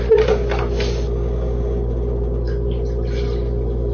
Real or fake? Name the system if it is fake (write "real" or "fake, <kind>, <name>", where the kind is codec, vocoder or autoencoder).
real